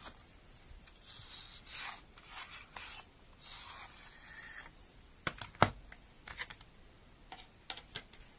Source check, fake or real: real